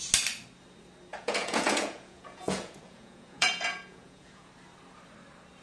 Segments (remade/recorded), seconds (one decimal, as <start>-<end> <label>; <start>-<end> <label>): 0.0-1.1 recorded; 1.1-4.5 remade; 4.5-5.6 recorded